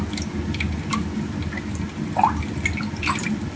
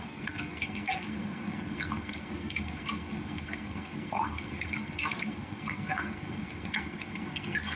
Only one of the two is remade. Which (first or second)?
second